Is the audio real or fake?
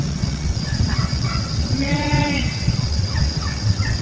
fake